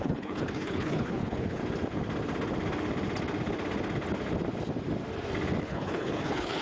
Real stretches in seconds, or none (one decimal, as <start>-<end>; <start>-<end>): 1.6-5.6